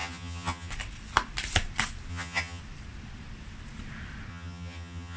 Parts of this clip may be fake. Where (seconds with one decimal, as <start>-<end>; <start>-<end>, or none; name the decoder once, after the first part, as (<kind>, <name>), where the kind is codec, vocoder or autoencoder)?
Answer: 0.0-0.7 (vocoder, HiFi-GAN); 2.1-2.6; 4.3-5.2